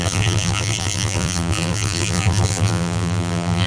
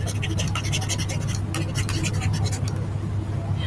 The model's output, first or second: first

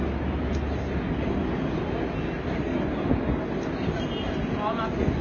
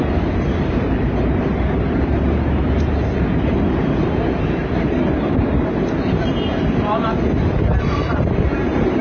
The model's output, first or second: second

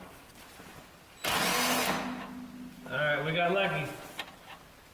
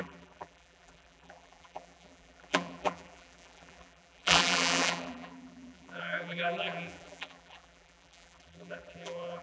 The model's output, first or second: second